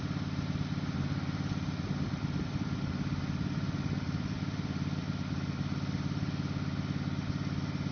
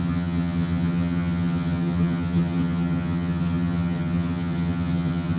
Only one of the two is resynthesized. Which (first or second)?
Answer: second